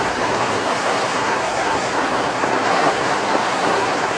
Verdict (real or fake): fake